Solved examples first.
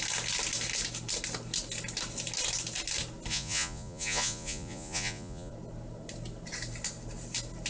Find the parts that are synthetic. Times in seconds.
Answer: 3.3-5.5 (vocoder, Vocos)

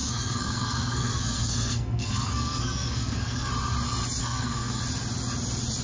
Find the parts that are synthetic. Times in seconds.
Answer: 0.0-3.5 (codec, SNAC); 4.2-4.8

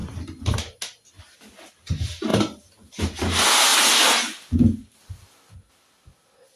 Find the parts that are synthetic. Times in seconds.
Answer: none

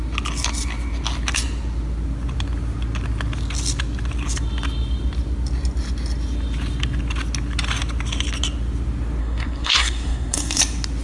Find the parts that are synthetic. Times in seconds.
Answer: 9.2-10.6 (codec, SNAC)